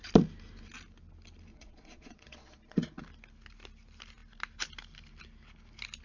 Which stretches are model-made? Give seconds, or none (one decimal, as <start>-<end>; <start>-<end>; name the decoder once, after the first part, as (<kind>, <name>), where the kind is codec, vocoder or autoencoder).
1.5-3.0 (vocoder, Vocos)